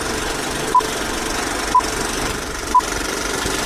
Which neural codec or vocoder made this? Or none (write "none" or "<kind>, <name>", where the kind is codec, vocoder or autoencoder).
vocoder, BigVGAN v2